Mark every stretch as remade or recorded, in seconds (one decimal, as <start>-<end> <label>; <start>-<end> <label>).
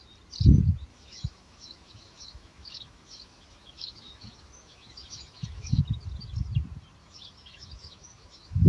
0.0-0.9 recorded; 0.9-5.8 remade; 5.8-7.0 recorded; 7.0-8.7 remade